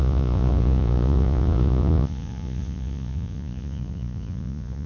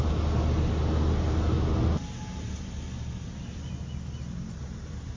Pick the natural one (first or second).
second